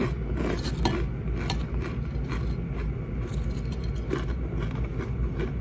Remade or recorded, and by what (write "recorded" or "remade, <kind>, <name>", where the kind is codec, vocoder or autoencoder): recorded